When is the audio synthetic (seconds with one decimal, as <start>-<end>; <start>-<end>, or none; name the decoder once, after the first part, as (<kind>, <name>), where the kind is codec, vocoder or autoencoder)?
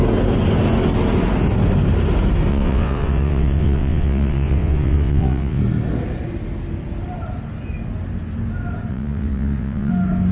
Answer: 2.5-5.6 (vocoder, WaveNeXt); 8.9-9.9